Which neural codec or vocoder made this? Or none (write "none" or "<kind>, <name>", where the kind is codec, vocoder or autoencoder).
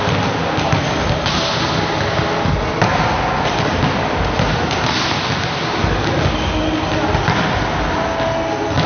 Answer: none